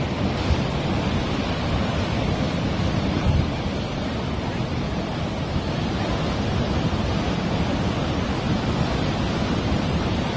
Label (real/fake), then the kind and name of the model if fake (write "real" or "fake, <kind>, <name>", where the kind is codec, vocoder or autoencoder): real